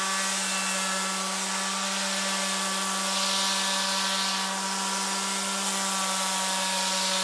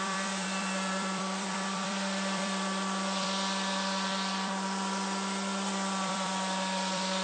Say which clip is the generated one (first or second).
second